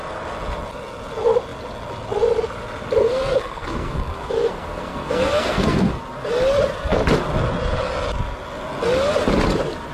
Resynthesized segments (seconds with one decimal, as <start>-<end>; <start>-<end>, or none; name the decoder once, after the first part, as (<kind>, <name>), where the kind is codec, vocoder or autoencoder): 3.0-6.0 (codec, SNAC)